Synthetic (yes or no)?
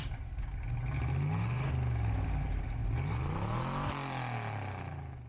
no